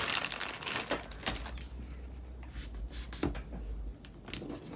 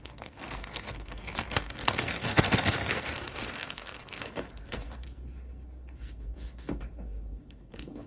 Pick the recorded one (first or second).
first